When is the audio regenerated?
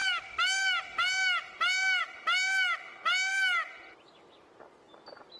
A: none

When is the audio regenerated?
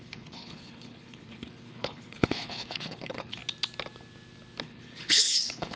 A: 0.0-3.4 (codec, HILCodec); 4.6-5.8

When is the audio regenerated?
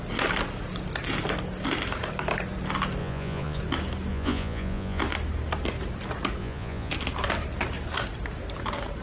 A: 3.0-3.6 (vocoder, Vocos); 4.1-5.0; 6.4-6.9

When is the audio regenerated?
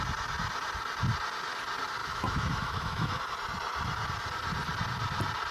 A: 2.0-3.2 (autoencoder, DAC-VAE)